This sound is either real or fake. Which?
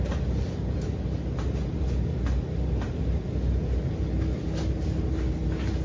real